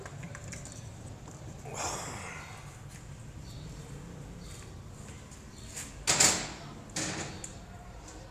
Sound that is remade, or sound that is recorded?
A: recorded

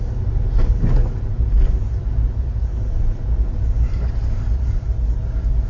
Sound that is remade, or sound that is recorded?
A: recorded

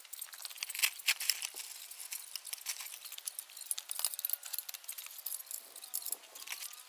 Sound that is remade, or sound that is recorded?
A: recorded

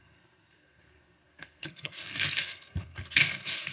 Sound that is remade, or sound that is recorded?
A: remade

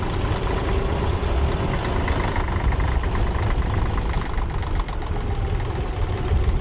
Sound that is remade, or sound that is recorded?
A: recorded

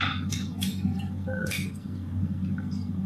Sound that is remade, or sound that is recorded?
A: remade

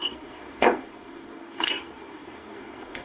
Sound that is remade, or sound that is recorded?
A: remade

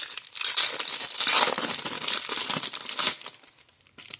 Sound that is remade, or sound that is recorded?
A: recorded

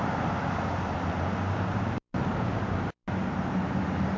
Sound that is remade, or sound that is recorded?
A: recorded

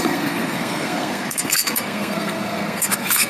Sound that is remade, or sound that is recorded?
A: remade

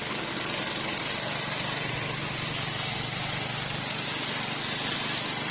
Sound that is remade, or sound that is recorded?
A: recorded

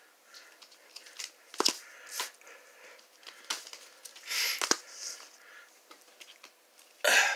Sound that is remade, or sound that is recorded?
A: recorded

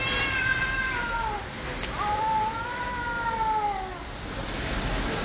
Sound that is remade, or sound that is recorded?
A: recorded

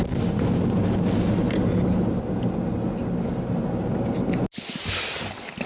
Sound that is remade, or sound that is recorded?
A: recorded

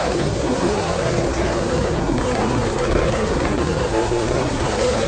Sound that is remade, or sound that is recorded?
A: remade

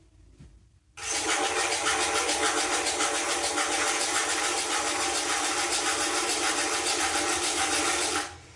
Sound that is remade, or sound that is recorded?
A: recorded